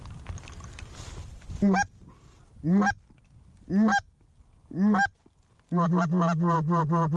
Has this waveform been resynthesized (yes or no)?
no